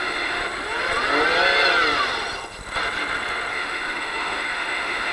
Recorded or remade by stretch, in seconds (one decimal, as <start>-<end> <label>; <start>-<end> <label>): 0.0-0.4 remade; 0.4-3.5 recorded; 3.5-5.1 remade